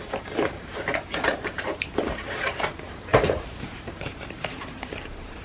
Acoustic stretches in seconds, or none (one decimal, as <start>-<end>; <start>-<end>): none